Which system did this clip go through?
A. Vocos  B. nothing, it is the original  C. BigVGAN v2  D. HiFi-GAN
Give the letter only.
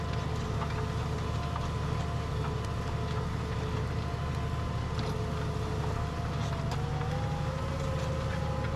B